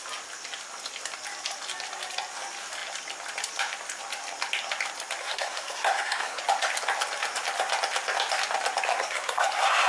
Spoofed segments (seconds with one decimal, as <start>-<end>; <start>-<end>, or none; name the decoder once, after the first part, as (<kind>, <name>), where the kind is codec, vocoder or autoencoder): 5.2-6.4 (codec, SNAC); 8.9-9.9